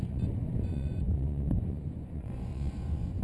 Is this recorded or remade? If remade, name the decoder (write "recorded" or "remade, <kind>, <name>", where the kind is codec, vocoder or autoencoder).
remade, vocoder, Vocos